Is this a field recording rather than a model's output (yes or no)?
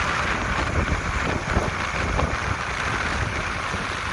yes